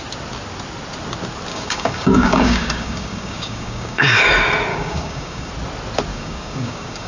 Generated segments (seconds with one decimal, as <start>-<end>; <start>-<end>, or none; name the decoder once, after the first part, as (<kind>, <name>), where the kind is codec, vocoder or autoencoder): 1.5-4.2 (codec, DAC); 4.7-5.5; 6.1-7.1